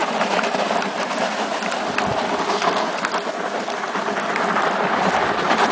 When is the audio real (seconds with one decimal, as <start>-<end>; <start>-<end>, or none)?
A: 0.0-5.7